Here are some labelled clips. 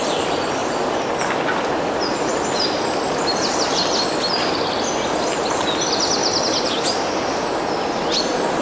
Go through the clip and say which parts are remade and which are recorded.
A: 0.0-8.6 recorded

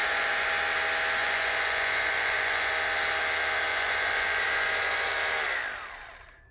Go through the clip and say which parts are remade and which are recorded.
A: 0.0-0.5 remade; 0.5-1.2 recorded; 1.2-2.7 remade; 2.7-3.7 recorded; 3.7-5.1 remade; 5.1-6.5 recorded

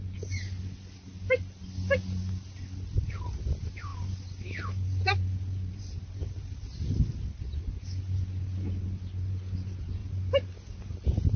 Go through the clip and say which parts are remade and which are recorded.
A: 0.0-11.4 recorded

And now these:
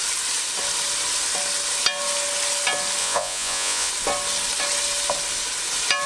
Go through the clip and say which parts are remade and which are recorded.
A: 0.0-3.0 recorded; 3.0-3.9 remade; 3.9-6.1 recorded

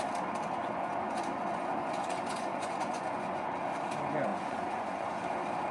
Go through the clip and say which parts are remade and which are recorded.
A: 0.0-0.6 recorded; 0.6-3.5 remade; 3.5-4.3 recorded; 4.3-5.2 remade; 5.2-5.7 recorded

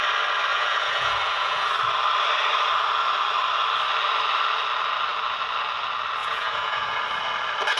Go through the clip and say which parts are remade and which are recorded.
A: 0.0-0.5 recorded; 0.5-1.7 remade; 1.7-6.2 recorded; 6.2-7.0 remade; 7.0-7.8 recorded